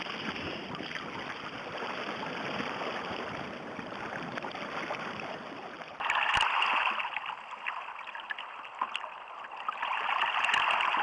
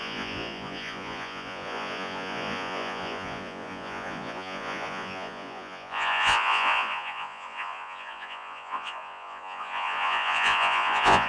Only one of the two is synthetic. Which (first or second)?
second